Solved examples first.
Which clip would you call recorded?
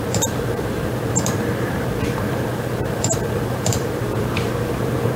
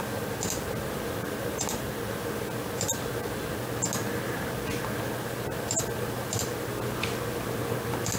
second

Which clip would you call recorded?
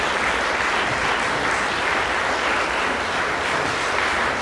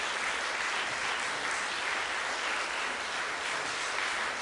second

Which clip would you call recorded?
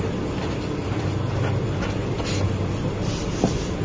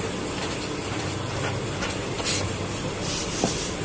first